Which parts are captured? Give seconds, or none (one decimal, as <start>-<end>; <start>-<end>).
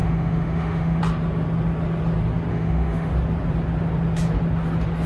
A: 1.0-2.5; 3.1-5.1